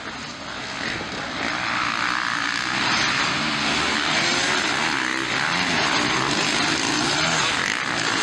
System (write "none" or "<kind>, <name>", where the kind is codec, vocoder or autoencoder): none